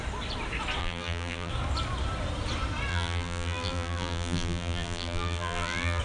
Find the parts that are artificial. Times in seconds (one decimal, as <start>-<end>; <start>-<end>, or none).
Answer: 0.8-1.5; 2.9-6.0